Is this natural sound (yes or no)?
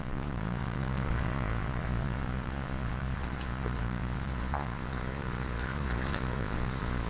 no